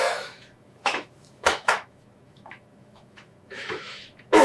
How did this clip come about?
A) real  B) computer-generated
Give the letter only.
B